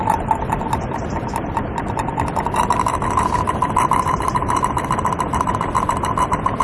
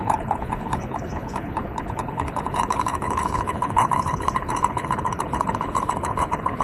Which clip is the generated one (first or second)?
second